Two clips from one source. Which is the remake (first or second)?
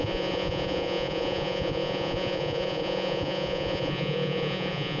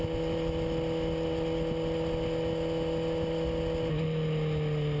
first